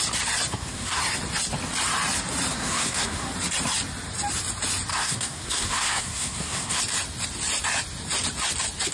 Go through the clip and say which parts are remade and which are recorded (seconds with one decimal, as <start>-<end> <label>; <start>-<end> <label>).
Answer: 0.0-0.5 recorded; 0.5-1.0 remade; 1.0-2.5 recorded; 2.5-3.3 remade; 3.3-4.9 recorded; 4.9-6.8 remade; 6.8-8.9 recorded